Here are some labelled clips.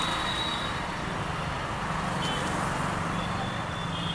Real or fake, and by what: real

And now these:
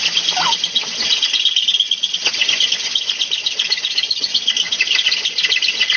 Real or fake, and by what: real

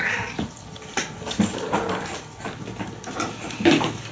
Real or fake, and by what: real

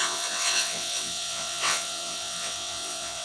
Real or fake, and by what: fake, vocoder, WaveNeXt